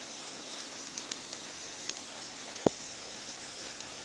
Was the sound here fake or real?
fake